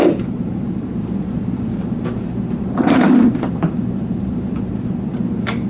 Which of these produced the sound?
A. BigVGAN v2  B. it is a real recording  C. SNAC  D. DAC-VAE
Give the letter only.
A